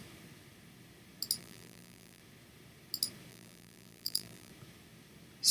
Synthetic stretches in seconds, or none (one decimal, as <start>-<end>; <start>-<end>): 1.4-2.2; 3.3-4.5